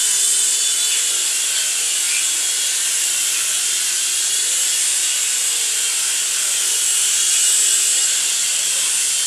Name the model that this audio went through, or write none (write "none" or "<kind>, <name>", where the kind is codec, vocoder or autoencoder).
vocoder, BigVGAN v2